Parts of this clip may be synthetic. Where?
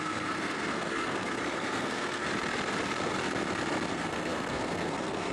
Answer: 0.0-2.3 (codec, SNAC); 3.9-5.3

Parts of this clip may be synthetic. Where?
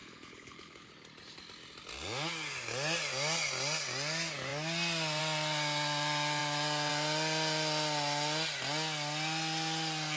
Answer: 0.0-0.9 (codec, HILCodec)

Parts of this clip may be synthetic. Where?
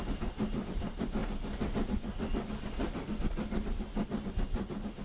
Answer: none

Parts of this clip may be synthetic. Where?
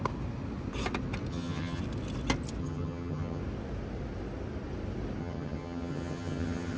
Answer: 1.3-1.8 (vocoder, HiFi-GAN); 2.6-3.4; 5.2-6.8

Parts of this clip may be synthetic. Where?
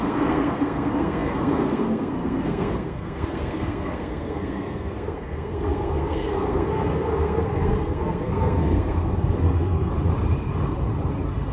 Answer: 0.0-9.9 (codec, SNAC)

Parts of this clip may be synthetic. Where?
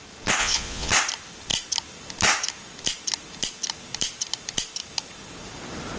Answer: 0.4-0.9 (vocoder, Vocos)